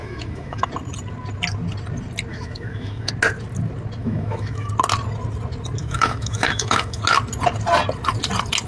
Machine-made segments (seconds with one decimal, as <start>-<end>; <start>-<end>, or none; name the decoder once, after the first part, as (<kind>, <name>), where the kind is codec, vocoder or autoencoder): 0.0-0.7 (autoencoder, DAC-VAE); 2.3-3.1; 4.0-4.7; 5.8-7.0